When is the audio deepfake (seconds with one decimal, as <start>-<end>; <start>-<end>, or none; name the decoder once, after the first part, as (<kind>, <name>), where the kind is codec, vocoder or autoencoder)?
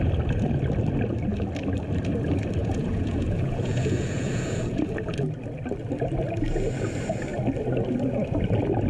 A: 2.6-4.9 (vocoder, Vocos)